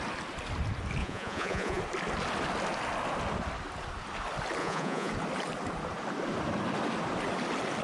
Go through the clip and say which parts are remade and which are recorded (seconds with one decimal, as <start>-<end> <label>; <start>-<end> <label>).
0.0-1.0 recorded; 1.0-1.8 remade; 1.8-4.6 recorded; 4.6-5.1 remade; 5.1-7.8 recorded